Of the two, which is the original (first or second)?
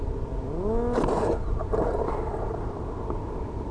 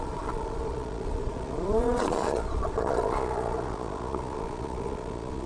first